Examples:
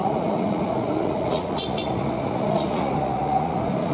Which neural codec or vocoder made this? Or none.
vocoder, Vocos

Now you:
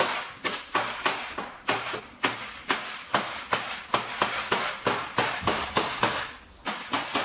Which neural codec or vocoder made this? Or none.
none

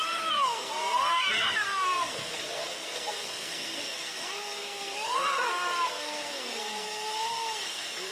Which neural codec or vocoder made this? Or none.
codec, SNAC